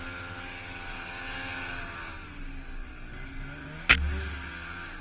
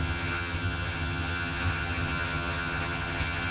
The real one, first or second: first